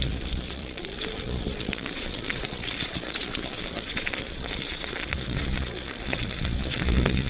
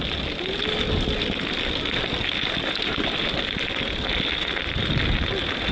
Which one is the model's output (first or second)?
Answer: first